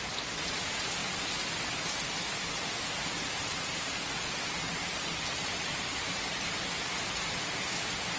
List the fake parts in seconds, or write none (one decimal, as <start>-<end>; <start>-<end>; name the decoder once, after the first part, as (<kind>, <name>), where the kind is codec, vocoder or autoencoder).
none